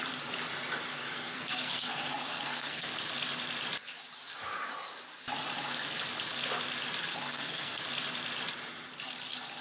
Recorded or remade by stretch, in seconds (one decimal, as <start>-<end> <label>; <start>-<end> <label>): 0.0-0.9 recorded; 0.9-2.9 remade; 2.9-7.1 recorded; 7.1-7.8 remade; 7.8-9.6 recorded